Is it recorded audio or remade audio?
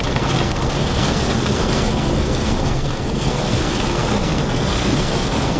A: remade